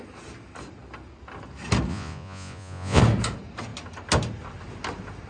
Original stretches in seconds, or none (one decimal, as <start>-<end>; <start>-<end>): 0.0-1.9; 3.0-5.3